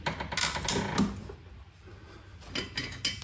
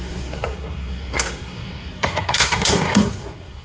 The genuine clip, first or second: first